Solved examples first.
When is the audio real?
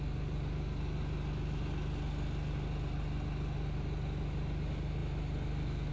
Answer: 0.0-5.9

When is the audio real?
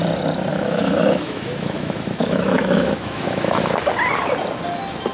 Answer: 0.0-0.5; 3.6-5.1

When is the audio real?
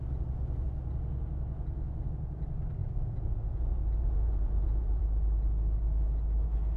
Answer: 0.0-2.8; 5.0-6.8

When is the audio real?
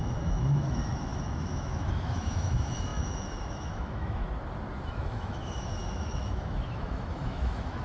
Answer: 4.2-4.9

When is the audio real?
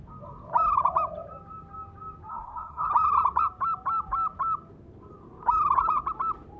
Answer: 0.0-2.3; 2.9-6.6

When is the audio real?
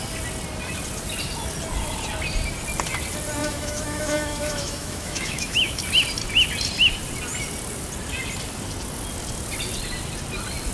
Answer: 0.0-3.4; 5.8-10.7